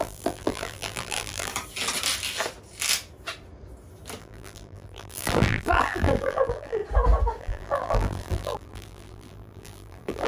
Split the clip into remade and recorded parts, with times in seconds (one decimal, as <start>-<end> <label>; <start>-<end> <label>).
0.0-1.5 remade; 1.5-4.2 recorded; 4.2-6.8 remade; 6.8-7.4 recorded; 7.4-10.3 remade

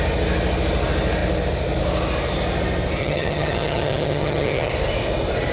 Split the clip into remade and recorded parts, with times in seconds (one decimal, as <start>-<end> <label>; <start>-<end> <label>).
0.0-3.0 recorded; 3.0-4.7 remade; 4.7-5.5 recorded